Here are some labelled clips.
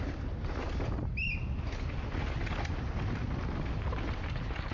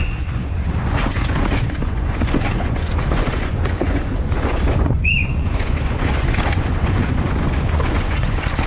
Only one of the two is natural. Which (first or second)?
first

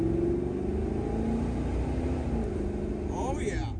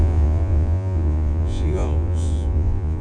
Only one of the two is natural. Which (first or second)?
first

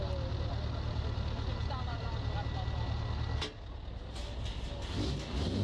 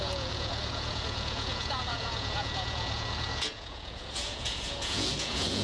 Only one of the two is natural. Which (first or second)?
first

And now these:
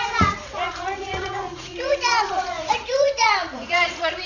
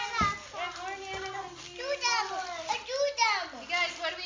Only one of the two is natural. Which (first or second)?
second